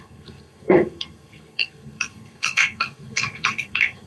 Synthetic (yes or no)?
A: yes